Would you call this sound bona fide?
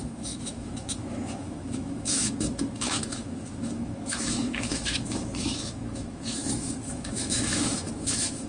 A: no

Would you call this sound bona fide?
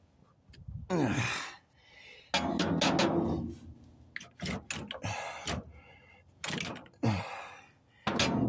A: yes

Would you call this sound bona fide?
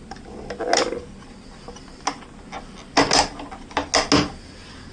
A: yes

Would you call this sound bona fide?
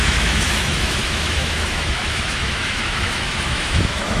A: no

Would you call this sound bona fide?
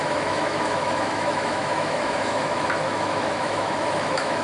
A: no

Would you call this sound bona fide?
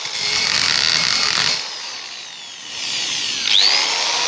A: yes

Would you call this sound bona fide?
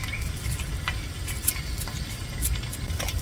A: yes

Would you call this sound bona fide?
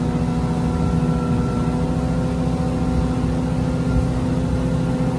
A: yes